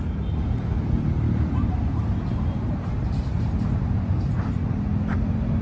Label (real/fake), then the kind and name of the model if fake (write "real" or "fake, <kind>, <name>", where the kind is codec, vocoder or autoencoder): real